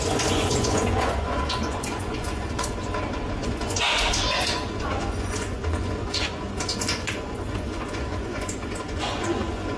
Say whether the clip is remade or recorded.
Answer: remade